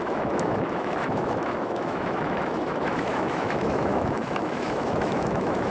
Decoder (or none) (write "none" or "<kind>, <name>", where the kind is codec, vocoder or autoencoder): autoencoder, DAC-VAE